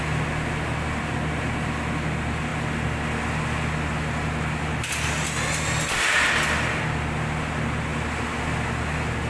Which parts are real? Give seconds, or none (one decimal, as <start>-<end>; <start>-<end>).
0.0-9.3